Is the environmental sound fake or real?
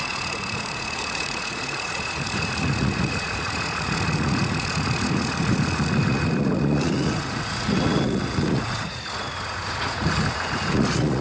fake